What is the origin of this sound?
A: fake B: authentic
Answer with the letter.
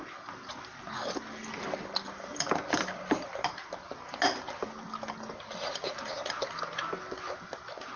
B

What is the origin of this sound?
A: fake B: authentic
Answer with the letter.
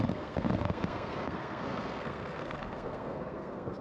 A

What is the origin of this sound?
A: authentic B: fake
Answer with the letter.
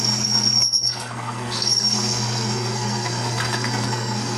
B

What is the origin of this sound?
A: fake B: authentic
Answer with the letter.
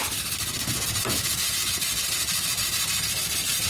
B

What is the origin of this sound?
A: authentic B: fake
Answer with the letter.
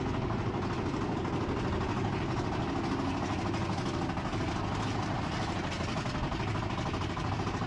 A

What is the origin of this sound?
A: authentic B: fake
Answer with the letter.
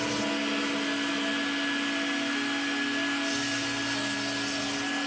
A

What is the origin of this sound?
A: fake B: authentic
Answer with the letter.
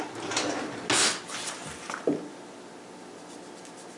B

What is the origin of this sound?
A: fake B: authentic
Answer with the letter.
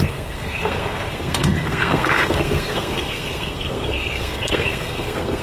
A